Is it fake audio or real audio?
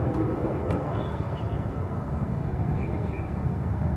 fake